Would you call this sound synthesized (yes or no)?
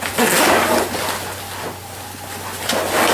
no